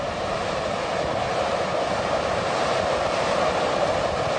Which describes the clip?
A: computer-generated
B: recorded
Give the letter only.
B